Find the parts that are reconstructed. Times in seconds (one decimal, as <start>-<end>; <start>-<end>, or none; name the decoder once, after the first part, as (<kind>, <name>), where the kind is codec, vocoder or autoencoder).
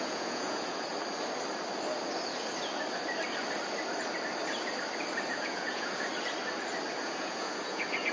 0.0-0.9 (vocoder, Vocos); 5.3-6.1; 7.0-8.1